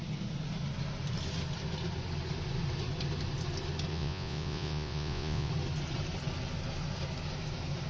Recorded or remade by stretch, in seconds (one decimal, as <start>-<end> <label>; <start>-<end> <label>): 0.0-3.9 recorded; 3.9-5.5 remade; 5.5-7.9 recorded